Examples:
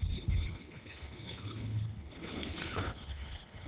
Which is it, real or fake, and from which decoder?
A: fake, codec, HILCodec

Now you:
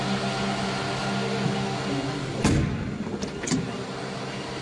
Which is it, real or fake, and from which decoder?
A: real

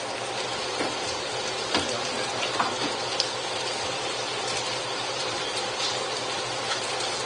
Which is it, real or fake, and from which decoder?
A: real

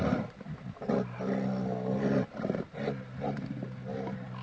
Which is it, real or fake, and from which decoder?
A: real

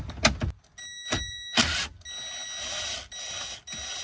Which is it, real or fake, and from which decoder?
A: real